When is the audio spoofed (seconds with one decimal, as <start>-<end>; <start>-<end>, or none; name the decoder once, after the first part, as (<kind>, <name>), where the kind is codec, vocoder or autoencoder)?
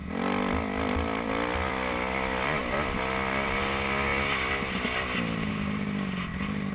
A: none